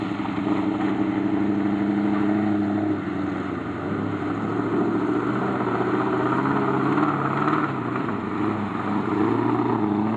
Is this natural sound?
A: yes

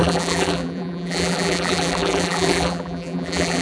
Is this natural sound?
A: no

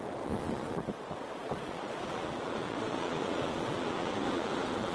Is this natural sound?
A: no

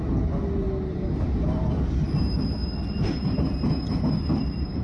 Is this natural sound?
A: yes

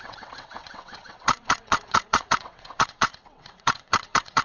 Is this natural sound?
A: no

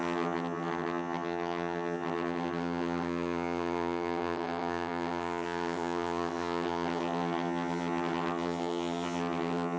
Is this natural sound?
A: no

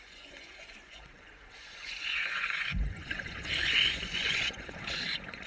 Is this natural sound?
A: no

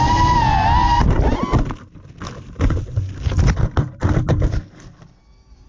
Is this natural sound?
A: yes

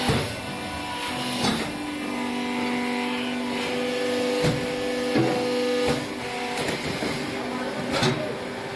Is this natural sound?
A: yes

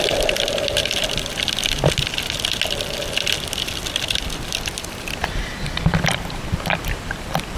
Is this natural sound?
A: no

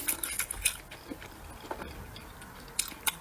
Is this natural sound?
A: yes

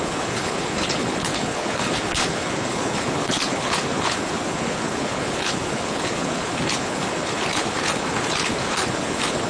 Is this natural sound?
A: no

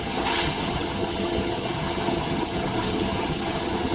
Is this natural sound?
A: no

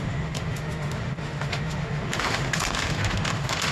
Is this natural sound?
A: no